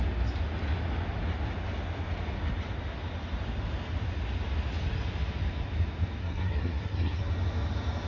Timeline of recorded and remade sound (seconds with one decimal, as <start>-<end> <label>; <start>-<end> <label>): 0.0-6.2 recorded; 6.2-7.2 remade; 7.2-8.1 recorded